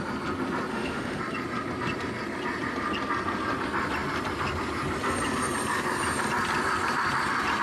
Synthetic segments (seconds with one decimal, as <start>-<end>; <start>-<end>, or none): 0.7-1.2